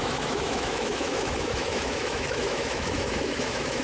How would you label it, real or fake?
fake